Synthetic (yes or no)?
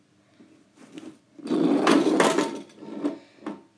no